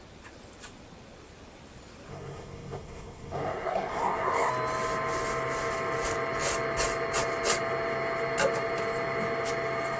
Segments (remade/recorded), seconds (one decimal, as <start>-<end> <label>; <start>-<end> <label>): 0.0-2.1 recorded; 2.1-4.5 remade; 4.5-10.0 recorded